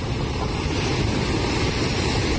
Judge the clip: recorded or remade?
recorded